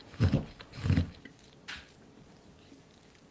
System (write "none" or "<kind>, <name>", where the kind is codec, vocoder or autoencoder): none